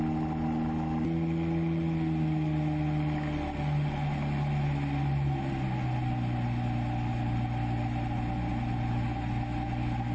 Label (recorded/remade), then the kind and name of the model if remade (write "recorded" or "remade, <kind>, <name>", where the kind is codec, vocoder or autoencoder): recorded